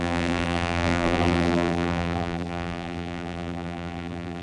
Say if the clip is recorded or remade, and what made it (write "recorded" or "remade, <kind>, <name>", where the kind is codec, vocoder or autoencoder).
remade, vocoder, BigVGAN v2